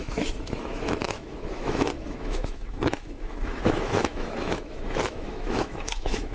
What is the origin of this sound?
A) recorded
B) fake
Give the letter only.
B